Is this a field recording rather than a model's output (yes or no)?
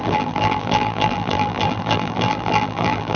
no